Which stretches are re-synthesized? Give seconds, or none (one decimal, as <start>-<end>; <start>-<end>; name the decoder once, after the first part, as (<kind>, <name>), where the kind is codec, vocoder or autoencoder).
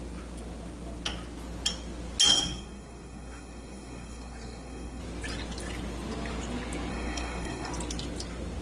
2.3-5.0 (codec, SNAC); 6.9-7.7